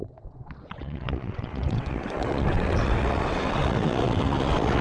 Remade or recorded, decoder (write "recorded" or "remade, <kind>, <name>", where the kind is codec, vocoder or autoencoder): remade, vocoder, WaveNeXt